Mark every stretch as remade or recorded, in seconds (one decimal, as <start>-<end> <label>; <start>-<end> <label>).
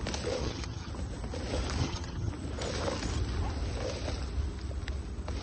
0.0-0.4 recorded; 0.4-0.9 remade; 0.9-1.8 recorded; 1.8-2.3 remade; 2.3-5.4 recorded